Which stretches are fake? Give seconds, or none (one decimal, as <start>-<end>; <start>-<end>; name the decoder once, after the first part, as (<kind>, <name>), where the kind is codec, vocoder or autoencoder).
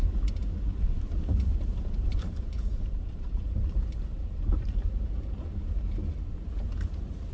1.5-5.3 (vocoder, BigVGAN v2)